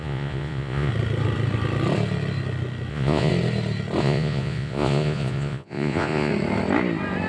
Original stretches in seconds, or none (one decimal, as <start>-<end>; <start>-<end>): 0.9-2.9; 3.3-4.0; 6.3-7.3

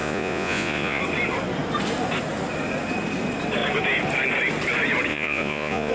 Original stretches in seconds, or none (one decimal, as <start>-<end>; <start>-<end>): 1.0-5.1

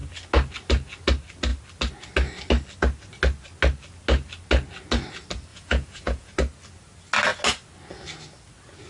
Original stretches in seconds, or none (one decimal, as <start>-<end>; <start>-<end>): 0.0-5.5; 6.3-8.9

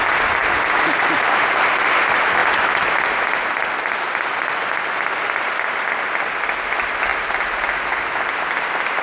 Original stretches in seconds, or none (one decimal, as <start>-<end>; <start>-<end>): 0.0-9.0

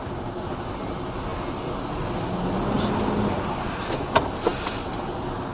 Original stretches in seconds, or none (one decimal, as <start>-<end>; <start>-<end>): 0.0-5.5